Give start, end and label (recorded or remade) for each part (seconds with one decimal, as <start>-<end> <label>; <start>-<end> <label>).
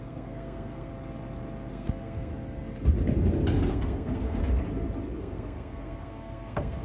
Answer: 0.0-0.9 remade; 0.9-1.7 recorded; 1.7-2.3 remade; 2.3-3.7 recorded; 3.7-4.4 remade; 4.4-5.2 recorded; 5.2-6.8 remade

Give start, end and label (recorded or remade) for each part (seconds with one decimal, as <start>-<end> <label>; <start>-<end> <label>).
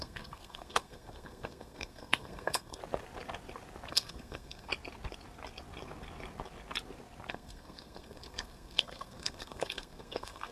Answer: 0.0-2.8 remade; 2.8-3.9 recorded; 3.9-4.7 remade; 4.7-7.3 recorded; 7.3-10.5 remade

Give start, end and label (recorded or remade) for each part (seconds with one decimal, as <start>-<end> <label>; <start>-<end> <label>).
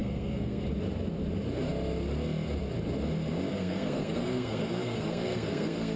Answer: 0.0-0.6 remade; 0.6-3.5 recorded; 3.5-6.0 remade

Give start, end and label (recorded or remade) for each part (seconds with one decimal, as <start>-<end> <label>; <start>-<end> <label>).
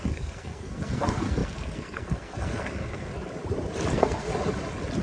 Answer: 0.0-3.1 remade; 3.1-3.9 recorded; 3.9-4.3 remade; 4.3-5.0 recorded